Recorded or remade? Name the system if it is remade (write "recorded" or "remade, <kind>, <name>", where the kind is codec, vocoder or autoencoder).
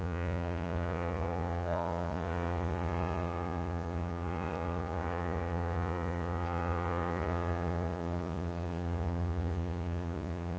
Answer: remade, vocoder, Vocos